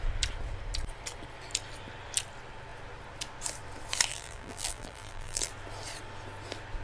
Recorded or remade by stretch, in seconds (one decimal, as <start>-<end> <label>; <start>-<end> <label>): 0.0-4.1 recorded; 4.1-5.5 remade; 5.5-6.8 recorded